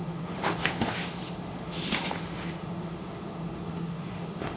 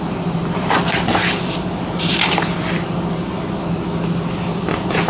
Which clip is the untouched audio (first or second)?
second